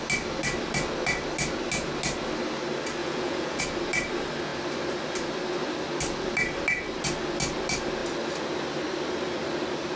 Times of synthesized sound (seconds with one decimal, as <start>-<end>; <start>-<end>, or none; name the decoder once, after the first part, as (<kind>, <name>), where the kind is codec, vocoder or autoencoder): 3.0-3.6 (vocoder, Vocos)